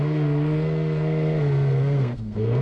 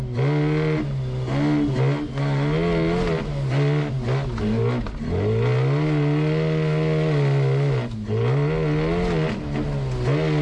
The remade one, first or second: first